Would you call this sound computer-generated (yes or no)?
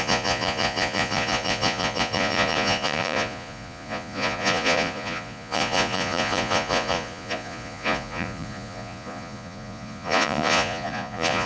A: yes